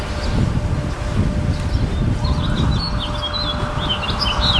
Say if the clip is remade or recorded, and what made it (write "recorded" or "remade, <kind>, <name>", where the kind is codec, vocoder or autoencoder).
recorded